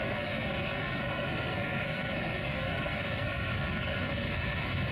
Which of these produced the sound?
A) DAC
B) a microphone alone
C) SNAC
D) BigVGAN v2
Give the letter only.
C